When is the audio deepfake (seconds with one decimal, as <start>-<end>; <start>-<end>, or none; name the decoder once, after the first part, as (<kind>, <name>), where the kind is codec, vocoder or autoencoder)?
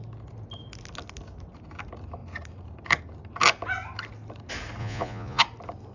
4.8-5.4 (vocoder, Vocos)